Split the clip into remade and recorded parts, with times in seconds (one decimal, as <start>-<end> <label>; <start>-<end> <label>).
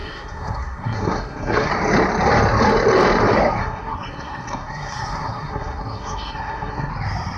0.0-1.7 remade; 1.7-3.6 recorded; 3.6-6.9 remade; 6.9-7.4 recorded